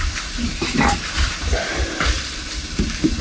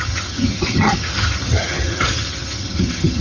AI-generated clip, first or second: second